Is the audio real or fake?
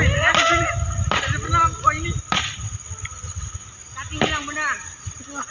real